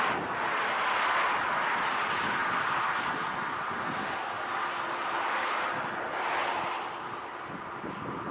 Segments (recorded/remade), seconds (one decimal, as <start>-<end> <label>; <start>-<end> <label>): 0.0-8.3 recorded